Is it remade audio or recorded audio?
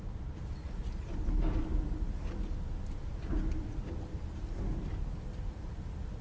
recorded